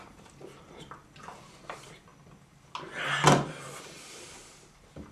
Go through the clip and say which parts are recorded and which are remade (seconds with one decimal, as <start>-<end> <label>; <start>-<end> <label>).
0.0-1.0 remade; 1.0-1.6 recorded; 1.6-2.1 remade; 2.1-3.6 recorded; 3.6-5.1 remade